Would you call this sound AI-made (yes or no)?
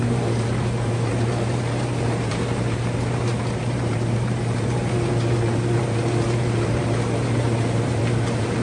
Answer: yes